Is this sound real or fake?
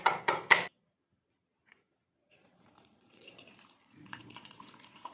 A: fake